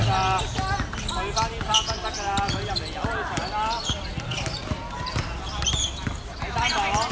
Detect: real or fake real